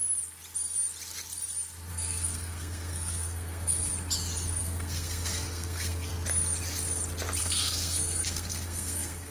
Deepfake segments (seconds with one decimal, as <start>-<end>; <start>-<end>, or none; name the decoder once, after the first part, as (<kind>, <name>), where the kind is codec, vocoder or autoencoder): 1.9-3.9 (codec, SNAC); 4.6-6.1; 7.4-9.3